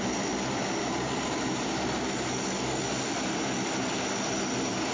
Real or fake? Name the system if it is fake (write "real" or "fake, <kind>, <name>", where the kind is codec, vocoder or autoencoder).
fake, vocoder, BigVGAN v2